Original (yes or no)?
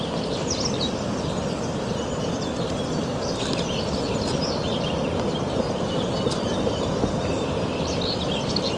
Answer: yes